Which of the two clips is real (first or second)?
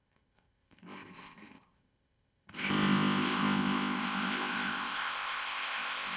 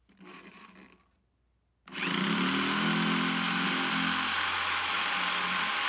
second